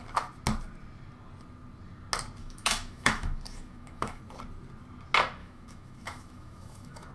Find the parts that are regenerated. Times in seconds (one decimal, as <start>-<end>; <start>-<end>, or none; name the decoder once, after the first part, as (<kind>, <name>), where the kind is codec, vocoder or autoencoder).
2.4-4.2 (autoencoder, DAC-VAE); 5.4-7.1